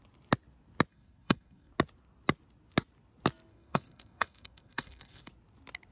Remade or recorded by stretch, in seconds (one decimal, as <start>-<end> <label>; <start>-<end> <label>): 0.0-0.9 recorded; 0.9-1.7 remade; 1.7-3.5 recorded; 3.5-5.3 remade; 5.3-5.9 recorded